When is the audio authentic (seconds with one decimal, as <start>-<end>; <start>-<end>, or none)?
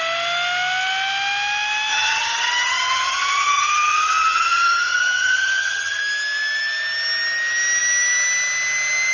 0.0-1.9; 6.0-9.1